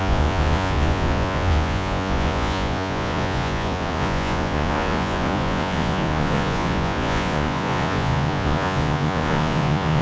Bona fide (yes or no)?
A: no